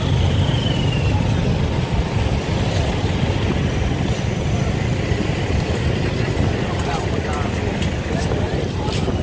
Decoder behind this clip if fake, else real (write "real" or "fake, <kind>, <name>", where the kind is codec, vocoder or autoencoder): real